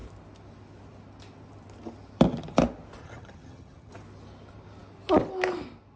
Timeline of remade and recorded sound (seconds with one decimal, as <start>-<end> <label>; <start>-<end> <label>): 0.0-3.0 recorded; 3.0-3.9 remade; 3.9-6.0 recorded